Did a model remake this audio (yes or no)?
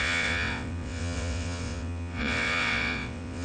yes